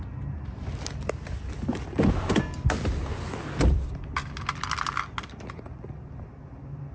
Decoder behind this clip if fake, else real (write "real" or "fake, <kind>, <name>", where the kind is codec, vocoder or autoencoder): real